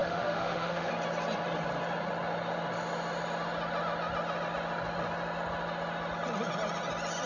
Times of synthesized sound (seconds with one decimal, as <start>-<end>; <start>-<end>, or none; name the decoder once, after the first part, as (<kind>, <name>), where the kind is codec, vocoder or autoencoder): 0.0-0.9 (autoencoder, DAC-VAE)

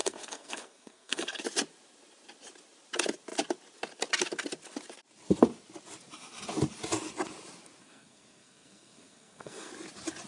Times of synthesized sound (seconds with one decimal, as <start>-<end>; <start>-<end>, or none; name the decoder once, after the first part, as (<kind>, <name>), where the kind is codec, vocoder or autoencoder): 0.0-1.4 (codec, SNAC); 7.8-9.7

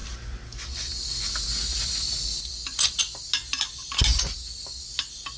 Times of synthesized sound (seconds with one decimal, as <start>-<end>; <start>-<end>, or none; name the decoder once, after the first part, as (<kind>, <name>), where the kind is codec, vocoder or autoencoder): none

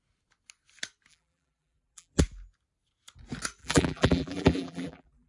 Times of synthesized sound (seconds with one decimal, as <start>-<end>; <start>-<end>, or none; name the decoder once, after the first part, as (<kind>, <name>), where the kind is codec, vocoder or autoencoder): 1.1-2.2 (vocoder, BigVGAN v2); 3.6-5.3

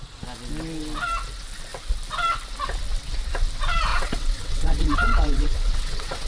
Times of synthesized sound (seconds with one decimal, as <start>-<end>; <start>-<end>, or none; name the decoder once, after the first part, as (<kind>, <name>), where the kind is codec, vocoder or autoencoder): 3.9-6.3 (vocoder, WaveNeXt)